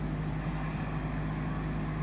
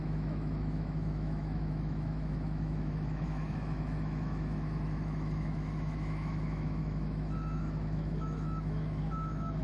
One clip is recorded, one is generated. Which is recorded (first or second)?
first